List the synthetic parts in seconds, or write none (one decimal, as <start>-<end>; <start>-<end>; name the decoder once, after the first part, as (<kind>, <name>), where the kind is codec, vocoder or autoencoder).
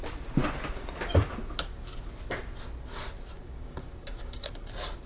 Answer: 3.4-4.5 (codec, DAC)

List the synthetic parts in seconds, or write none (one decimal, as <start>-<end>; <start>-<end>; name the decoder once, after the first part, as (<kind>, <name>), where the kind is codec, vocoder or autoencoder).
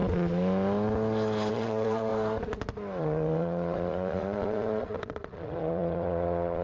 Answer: 1.5-2.1 (vocoder, Vocos); 3.0-6.6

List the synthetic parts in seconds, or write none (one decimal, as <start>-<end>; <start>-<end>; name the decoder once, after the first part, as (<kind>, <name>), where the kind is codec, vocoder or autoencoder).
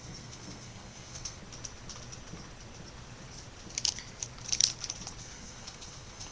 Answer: 0.0-1.4 (codec, SNAC); 5.2-6.3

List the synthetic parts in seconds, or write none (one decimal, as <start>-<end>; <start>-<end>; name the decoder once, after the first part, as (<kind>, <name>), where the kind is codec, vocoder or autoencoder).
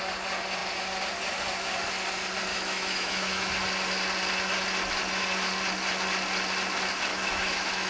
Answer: 2.5-3.5 (autoencoder, DAC-VAE); 7.1-7.9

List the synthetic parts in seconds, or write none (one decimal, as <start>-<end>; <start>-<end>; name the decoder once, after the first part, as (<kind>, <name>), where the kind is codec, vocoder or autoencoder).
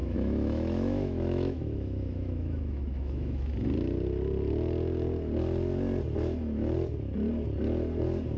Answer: 0.0-3.5 (autoencoder, DAC-VAE)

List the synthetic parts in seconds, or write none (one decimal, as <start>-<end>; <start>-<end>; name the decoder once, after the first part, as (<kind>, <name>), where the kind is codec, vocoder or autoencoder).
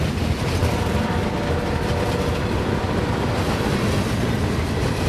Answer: 0.6-3.7 (vocoder, BigVGAN v2)